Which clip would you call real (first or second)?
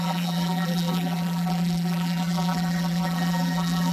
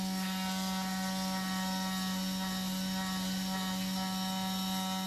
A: second